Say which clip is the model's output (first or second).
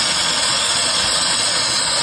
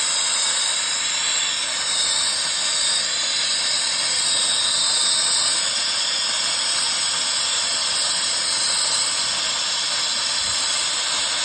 first